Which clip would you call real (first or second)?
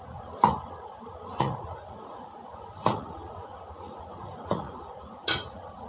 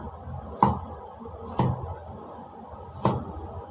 second